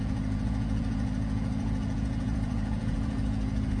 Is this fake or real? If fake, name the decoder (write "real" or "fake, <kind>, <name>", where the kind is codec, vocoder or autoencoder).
fake, vocoder, Vocos